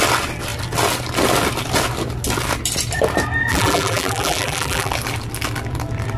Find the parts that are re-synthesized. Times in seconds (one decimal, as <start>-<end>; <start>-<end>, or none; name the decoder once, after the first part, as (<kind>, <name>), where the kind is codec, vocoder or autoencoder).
3.5-4.9 (vocoder, BigVGAN v2)

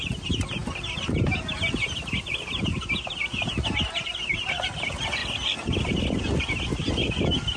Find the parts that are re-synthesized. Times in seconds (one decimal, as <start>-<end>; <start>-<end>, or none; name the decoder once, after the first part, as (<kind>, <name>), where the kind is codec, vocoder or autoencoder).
none

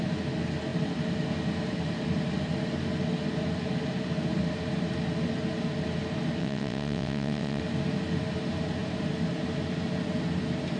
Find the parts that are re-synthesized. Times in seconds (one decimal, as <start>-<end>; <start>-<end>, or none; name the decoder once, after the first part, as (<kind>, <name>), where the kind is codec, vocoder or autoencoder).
6.4-7.6 (vocoder, WaveNeXt)